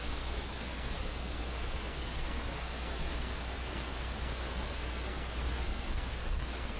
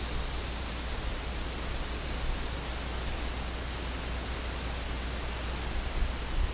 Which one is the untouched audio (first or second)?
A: second